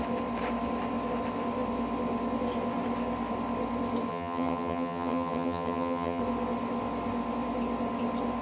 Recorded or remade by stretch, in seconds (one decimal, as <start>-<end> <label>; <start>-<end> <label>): 0.0-4.1 recorded; 4.1-6.2 remade; 6.2-8.4 recorded